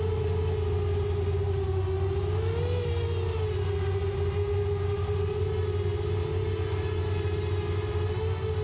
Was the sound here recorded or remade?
recorded